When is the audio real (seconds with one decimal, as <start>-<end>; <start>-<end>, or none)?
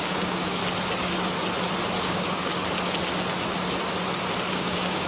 0.6-2.0; 2.5-4.5